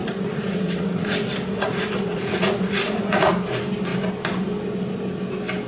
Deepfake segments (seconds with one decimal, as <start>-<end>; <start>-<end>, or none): 0.0-3.3